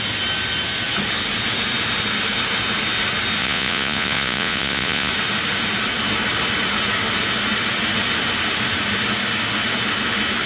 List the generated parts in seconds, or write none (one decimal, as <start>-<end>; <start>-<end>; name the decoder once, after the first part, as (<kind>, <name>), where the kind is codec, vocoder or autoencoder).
3.4-5.1 (vocoder, Vocos)